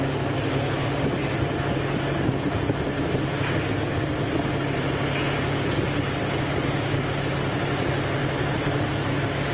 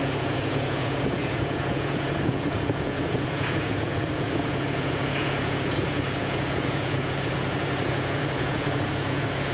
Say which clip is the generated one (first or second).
second